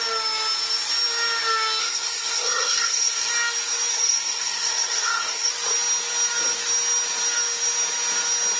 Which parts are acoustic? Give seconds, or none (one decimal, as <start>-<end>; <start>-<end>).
0.0-1.8; 3.3-3.9; 5.5-8.6